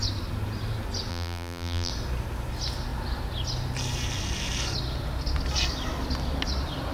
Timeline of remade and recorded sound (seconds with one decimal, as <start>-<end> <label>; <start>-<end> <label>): 0.0-1.1 recorded; 1.1-1.9 remade; 1.9-6.9 recorded